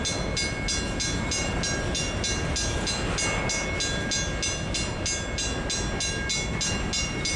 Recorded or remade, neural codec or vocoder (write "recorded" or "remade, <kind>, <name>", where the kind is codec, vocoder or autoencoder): recorded